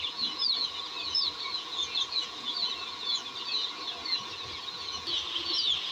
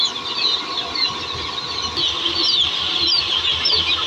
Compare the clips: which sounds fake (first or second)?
first